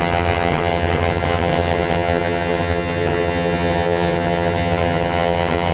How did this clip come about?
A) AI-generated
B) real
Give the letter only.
A